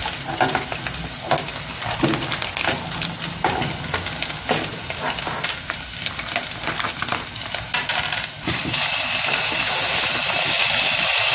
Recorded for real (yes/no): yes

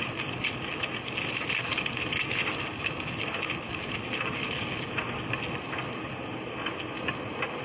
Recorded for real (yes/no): yes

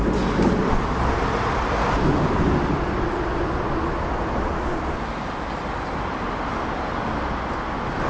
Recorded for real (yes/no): yes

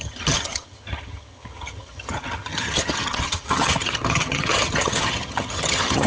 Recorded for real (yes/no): no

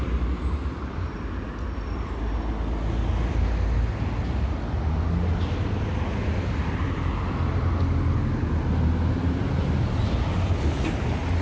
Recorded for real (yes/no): yes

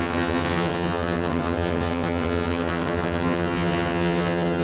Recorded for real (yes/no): no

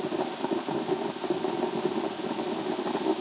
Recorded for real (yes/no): yes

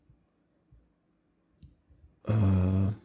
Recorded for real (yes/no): yes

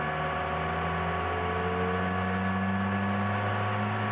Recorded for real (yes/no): yes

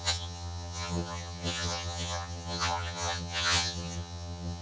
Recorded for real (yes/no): no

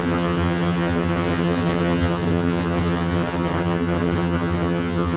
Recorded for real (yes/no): no